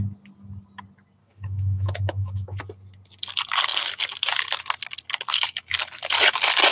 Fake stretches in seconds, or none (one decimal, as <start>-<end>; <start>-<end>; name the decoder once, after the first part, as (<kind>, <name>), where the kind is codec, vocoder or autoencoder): 1.2-2.6 (autoencoder, DAC-VAE)